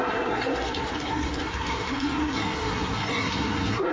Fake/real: fake